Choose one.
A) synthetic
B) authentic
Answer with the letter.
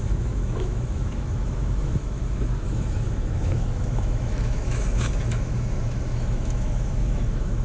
A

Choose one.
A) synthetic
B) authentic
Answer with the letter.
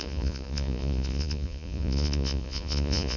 A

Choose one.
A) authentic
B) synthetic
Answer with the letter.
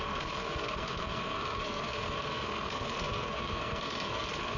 B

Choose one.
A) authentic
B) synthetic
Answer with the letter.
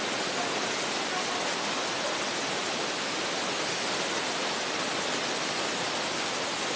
A